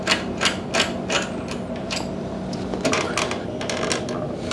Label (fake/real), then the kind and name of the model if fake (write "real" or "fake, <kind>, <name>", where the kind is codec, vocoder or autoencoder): real